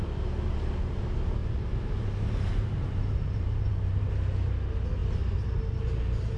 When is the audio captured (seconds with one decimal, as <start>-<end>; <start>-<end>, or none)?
0.0-1.4; 4.1-6.4